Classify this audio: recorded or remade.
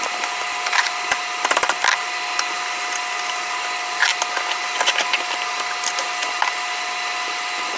recorded